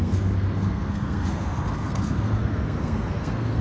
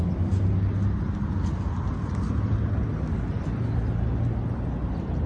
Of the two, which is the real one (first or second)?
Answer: second